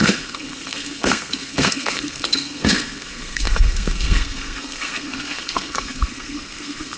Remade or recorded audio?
remade